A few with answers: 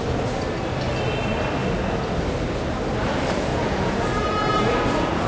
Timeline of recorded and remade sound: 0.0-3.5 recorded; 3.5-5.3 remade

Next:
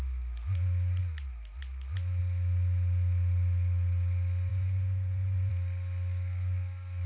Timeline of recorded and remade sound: 0.0-4.5 recorded; 4.5-5.5 remade; 5.5-7.1 recorded